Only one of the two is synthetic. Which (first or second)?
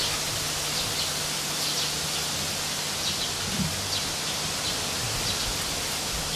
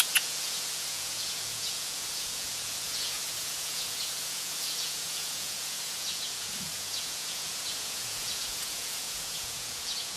second